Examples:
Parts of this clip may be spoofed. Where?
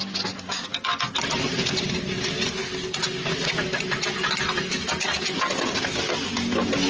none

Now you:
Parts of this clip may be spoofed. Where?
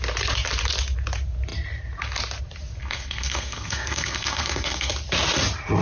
2.8-4.9 (codec, SNAC)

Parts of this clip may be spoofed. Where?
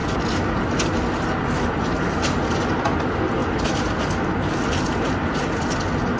none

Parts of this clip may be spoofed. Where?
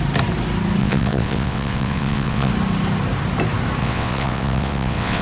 0.8-2.5 (vocoder, WaveNeXt); 3.8-5.2